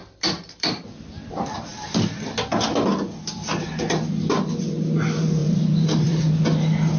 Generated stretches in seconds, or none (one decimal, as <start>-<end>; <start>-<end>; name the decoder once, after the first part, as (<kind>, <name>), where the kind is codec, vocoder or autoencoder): 0.0-1.2 (vocoder, BigVGAN v2); 5.4-6.3